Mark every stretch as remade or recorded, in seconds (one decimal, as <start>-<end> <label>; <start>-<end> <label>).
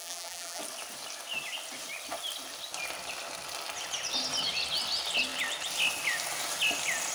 0.0-0.6 remade; 0.6-7.1 recorded